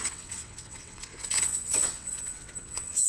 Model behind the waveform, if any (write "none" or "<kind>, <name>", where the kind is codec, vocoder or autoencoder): vocoder, WaveNeXt